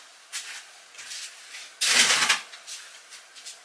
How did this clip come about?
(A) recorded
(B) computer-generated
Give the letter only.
A